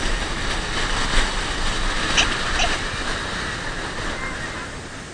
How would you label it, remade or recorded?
recorded